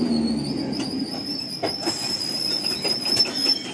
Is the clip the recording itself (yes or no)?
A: yes